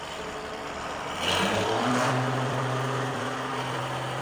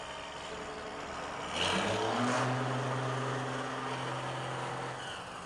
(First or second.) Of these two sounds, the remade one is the first